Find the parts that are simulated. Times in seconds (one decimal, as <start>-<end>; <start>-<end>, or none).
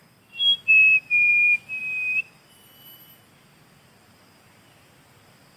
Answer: none